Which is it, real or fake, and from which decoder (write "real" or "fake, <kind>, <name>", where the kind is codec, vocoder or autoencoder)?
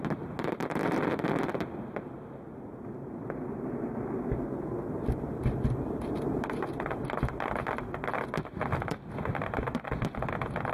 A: real